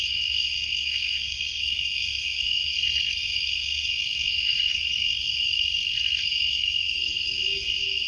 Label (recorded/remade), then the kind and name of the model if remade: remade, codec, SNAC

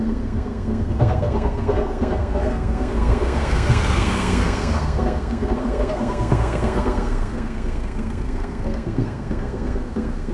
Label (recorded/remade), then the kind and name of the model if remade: remade, codec, SNAC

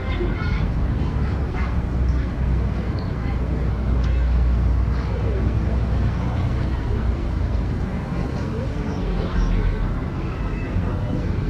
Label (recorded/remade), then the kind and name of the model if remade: remade, codec, SNAC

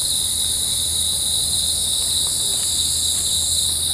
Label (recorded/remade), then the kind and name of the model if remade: recorded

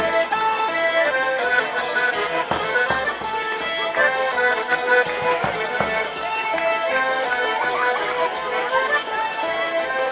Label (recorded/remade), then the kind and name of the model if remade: recorded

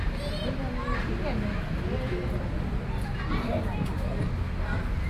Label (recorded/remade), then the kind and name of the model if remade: recorded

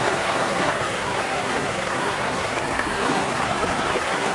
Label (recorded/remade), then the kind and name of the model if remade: remade, codec, SNAC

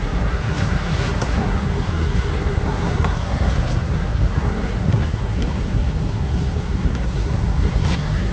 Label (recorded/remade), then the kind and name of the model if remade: remade, codec, SNAC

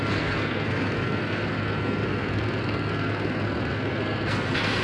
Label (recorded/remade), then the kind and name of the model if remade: remade, codec, SNAC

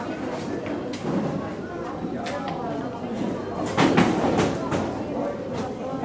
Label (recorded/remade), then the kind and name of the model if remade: recorded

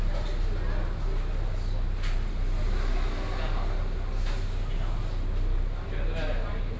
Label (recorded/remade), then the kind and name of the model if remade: recorded